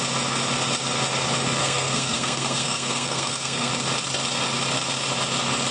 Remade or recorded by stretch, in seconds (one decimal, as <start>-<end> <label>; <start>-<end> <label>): 0.0-1.6 recorded; 1.6-3.7 remade; 3.7-5.7 recorded